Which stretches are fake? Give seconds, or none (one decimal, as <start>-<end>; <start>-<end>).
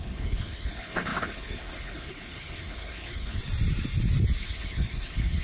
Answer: 0.0-3.4; 4.4-5.4